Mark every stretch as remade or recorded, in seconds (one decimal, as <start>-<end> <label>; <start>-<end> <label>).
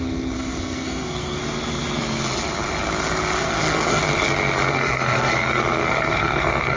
0.0-1.4 remade; 1.4-3.4 recorded; 3.4-4.0 remade; 4.0-4.7 recorded; 4.7-6.8 remade